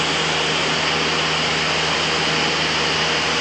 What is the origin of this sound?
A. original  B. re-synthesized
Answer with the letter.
A